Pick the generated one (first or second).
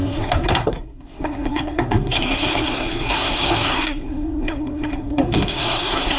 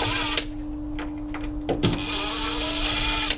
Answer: first